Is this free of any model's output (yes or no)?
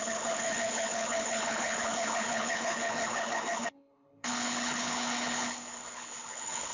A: no